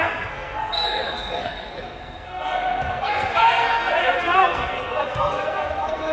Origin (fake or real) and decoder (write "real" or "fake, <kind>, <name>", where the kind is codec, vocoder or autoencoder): fake, codec, SNAC